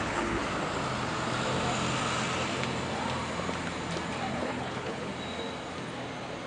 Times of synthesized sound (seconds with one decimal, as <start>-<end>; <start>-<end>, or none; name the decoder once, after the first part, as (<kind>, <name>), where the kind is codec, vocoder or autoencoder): 0.0-0.4 (codec, HILCodec); 4.3-5.1